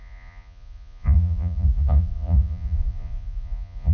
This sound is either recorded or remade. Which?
remade